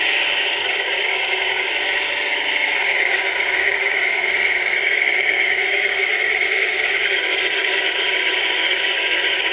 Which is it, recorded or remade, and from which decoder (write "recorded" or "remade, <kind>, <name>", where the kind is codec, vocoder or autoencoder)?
remade, codec, DAC